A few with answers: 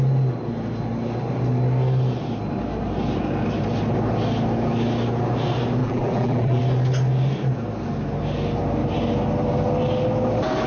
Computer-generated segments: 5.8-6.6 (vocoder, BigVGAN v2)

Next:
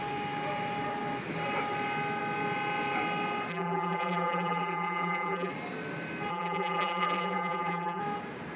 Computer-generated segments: 3.5-5.5 (vocoder, BigVGAN v2); 6.3-8.0